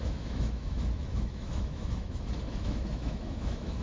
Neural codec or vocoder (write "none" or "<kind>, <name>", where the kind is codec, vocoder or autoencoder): autoencoder, DAC-VAE